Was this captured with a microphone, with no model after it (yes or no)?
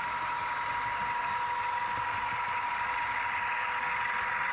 yes